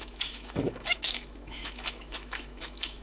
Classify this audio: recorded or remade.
remade